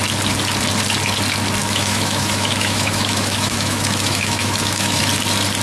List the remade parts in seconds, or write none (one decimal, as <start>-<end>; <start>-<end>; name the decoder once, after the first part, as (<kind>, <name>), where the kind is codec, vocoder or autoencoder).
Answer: 1.6-5.0 (autoencoder, DAC-VAE)